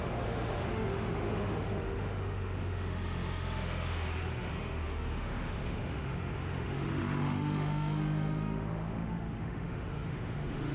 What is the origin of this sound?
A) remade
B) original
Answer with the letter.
A